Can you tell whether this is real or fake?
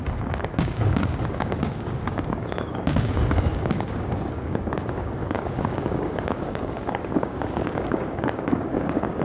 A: fake